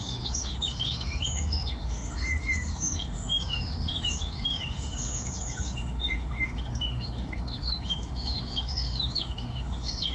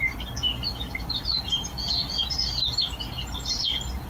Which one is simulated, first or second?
first